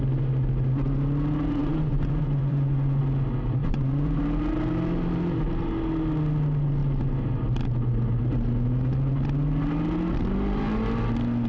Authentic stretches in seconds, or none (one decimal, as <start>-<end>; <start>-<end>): 0.0-1.6; 3.0-3.6; 4.2-11.5